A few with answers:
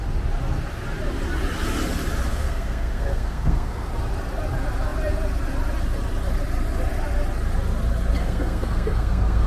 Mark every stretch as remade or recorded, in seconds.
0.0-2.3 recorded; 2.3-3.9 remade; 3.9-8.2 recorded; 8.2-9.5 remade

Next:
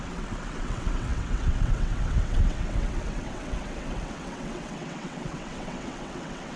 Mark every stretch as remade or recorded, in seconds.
0.0-6.6 remade

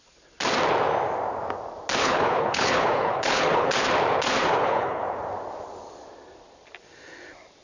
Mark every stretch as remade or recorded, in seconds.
0.0-2.0 recorded; 2.0-3.7 remade; 3.7-4.4 recorded; 4.4-5.0 remade; 5.0-7.6 recorded

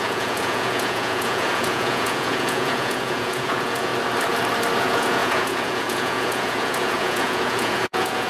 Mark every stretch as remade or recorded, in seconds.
0.0-3.9 remade; 3.9-4.8 recorded; 4.8-8.3 remade

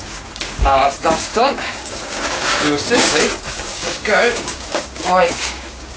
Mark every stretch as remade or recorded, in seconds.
0.0-6.0 remade